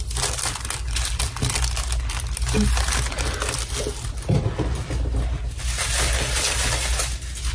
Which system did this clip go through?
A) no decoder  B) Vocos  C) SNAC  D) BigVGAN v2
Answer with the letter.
A